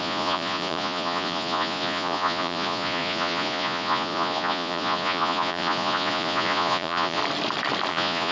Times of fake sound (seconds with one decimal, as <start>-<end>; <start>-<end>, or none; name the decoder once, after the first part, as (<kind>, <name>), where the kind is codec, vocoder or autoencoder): 0.0-7.2 (vocoder, Vocos); 7.9-8.3